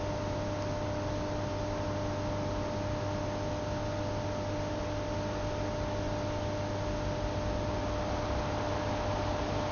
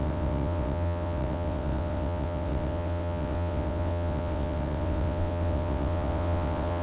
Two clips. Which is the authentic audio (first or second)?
first